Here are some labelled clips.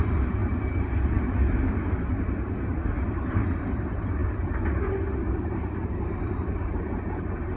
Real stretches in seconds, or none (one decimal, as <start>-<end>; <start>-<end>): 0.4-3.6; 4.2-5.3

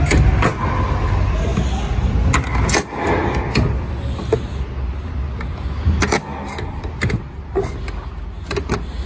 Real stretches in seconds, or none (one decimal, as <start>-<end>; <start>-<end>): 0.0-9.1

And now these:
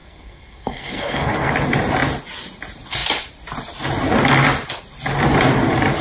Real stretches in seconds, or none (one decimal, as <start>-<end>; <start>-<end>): 1.5-6.0

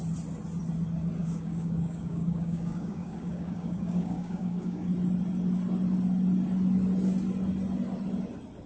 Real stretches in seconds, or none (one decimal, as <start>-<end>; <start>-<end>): 0.0-1.2; 4.9-8.7

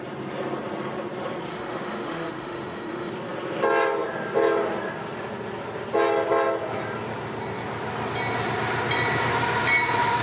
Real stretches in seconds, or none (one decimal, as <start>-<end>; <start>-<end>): 0.0-1.5; 3.1-10.2